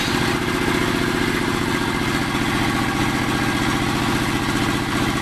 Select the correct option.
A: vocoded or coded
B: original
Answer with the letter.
B